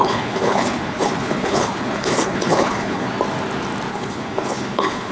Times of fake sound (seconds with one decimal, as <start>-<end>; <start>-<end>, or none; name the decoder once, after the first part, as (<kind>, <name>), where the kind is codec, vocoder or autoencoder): 0.0-3.1 (codec, HILCodec); 3.9-5.1